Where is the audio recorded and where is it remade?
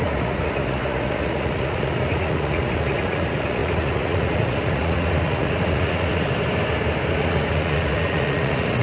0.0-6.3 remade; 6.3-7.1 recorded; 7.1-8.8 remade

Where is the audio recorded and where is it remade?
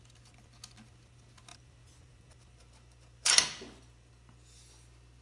0.0-1.5 recorded; 1.5-4.1 remade; 4.1-5.2 recorded